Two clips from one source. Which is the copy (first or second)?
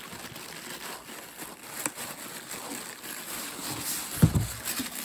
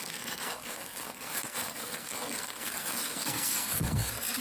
second